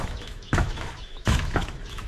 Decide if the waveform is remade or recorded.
remade